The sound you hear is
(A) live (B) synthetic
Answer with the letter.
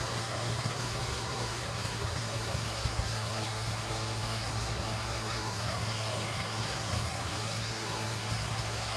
B